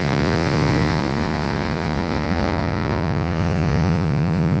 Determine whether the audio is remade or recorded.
remade